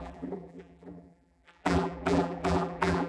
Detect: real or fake fake